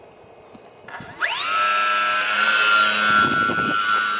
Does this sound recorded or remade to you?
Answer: recorded